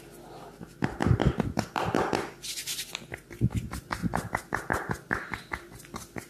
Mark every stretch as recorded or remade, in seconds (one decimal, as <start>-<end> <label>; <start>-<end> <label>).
0.0-6.3 recorded